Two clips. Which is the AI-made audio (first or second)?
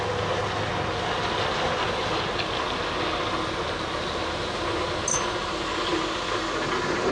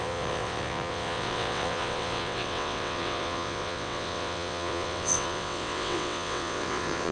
second